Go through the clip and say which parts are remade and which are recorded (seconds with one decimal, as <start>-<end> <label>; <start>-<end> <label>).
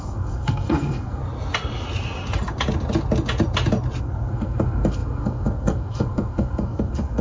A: 0.0-1.2 remade; 1.2-4.0 recorded; 4.0-7.2 remade